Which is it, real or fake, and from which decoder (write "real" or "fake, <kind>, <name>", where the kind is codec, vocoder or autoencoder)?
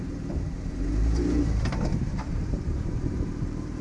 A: fake, vocoder, BigVGAN v2